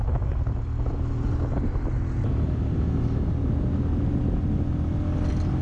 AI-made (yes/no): no